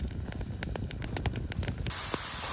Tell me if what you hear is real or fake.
real